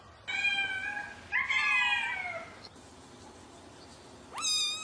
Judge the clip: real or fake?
real